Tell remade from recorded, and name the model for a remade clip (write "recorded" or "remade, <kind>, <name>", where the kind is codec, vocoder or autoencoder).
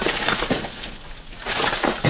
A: remade, vocoder, Vocos